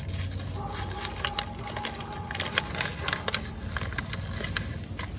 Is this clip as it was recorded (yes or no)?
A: yes